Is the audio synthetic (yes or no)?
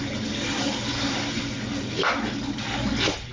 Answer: no